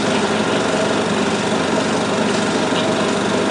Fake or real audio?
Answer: real